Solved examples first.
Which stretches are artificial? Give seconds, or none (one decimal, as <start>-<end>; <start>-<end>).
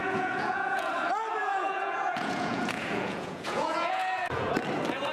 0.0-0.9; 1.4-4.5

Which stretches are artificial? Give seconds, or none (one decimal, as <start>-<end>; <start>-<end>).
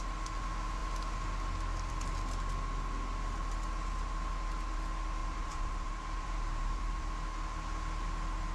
5.2-7.1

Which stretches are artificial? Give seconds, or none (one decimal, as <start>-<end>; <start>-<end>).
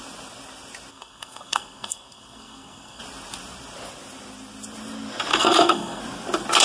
0.9-3.0; 5.3-6.0